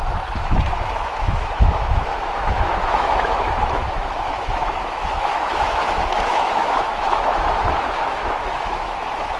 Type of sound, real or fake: fake